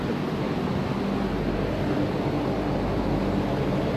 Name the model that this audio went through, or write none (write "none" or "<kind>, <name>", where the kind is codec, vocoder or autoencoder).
none